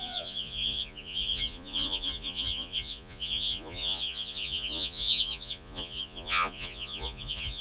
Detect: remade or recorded remade